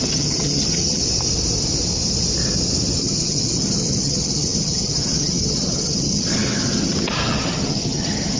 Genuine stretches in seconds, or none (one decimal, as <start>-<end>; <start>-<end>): 1.0-3.0